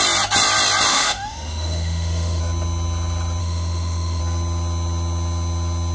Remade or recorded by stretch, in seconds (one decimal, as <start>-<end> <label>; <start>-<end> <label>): 0.0-0.9 recorded; 0.9-2.4 remade; 2.4-3.4 recorded; 3.4-4.2 remade; 4.2-5.9 recorded